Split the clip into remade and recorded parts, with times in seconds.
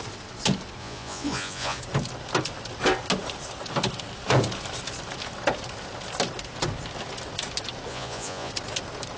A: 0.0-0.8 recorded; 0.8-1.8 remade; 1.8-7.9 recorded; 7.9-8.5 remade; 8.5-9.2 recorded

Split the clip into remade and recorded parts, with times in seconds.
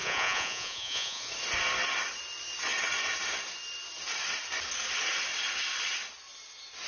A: 0.0-1.3 remade; 1.3-6.9 recorded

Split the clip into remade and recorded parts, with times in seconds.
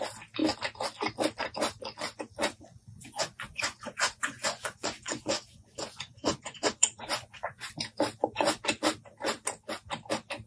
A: 0.0-2.4 recorded; 2.4-7.7 remade; 7.7-10.5 recorded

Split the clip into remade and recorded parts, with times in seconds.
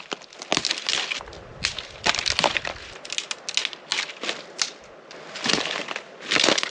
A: 0.0-6.7 recorded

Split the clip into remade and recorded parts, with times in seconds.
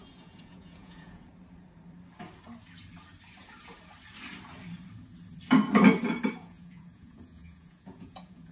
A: 0.0-1.3 remade; 1.3-6.4 recorded; 6.4-8.5 remade